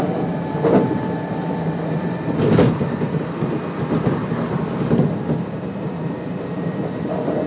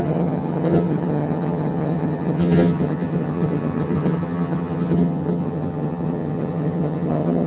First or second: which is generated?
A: second